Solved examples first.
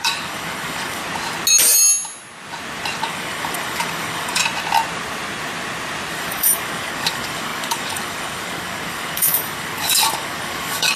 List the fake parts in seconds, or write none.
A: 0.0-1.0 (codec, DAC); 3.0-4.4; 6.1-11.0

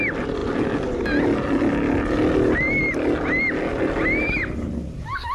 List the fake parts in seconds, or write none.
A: none

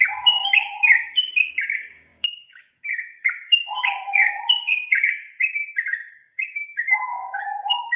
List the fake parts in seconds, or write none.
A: 0.0-5.2 (codec, DAC); 6.1-8.0

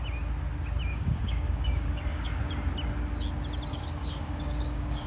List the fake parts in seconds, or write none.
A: 0.9-2.3 (codec, DAC); 3.7-5.1

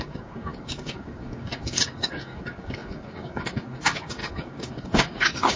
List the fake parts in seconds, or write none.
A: 0.0-5.6 (codec, DAC)

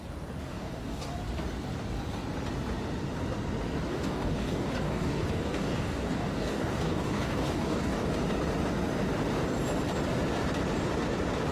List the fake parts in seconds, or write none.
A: 0.5-1.1 (codec, DAC); 3.9-8.1

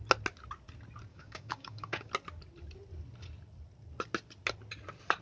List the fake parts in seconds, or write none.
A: 1.1-2.1 (codec, DAC)